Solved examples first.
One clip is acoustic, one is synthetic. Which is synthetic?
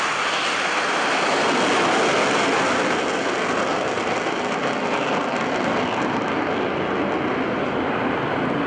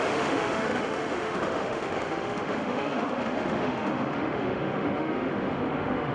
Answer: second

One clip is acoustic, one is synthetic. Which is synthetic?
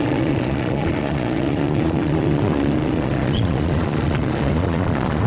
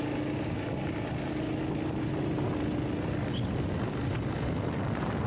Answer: first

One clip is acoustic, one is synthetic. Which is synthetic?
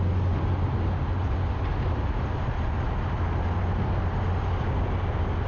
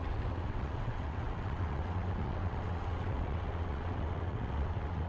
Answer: second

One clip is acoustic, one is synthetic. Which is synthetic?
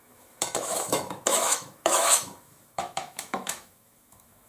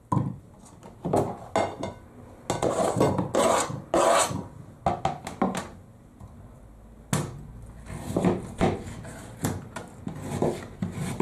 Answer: first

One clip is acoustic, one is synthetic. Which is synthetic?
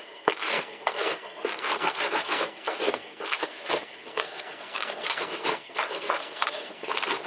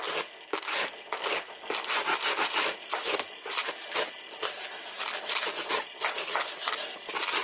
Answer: first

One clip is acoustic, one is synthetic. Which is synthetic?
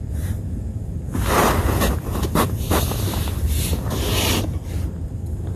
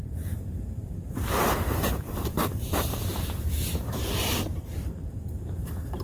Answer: second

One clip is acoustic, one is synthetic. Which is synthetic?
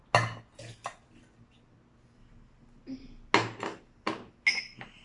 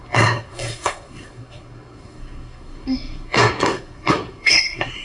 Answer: second